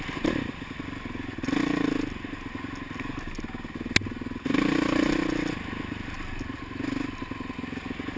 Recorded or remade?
recorded